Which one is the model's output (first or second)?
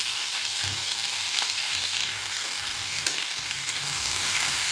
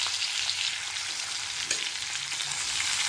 first